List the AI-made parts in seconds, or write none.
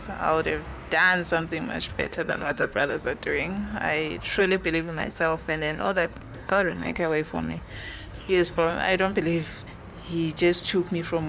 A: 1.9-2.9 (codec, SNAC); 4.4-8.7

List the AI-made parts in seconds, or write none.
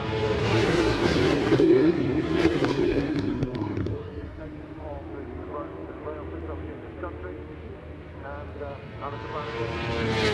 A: 0.4-4.4 (codec, SNAC)